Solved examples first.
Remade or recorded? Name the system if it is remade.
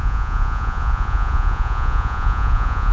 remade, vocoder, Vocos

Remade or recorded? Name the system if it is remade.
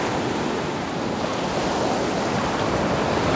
recorded